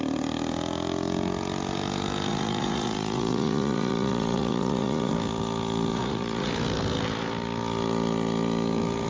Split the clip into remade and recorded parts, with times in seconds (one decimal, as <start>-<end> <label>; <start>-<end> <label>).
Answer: 0.0-2.3 recorded; 2.3-5.1 remade; 5.1-5.9 recorded; 5.9-6.5 remade; 6.5-9.1 recorded